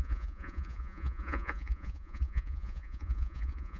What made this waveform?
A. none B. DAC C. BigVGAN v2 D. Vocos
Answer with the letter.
D